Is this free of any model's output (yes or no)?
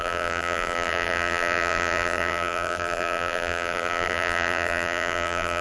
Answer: no